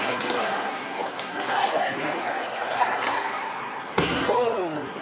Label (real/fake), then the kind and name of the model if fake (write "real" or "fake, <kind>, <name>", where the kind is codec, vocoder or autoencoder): fake, codec, SNAC